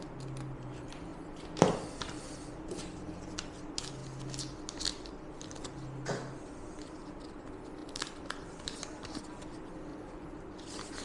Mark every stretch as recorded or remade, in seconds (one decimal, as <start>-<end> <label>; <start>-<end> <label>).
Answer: 0.0-9.9 recorded; 9.9-10.4 remade; 10.4-11.0 recorded